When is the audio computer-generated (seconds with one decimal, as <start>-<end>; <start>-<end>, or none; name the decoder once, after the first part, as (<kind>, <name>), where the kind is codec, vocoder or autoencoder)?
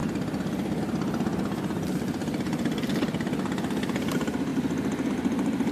0.8-4.5 (vocoder, BigVGAN v2); 5.1-5.7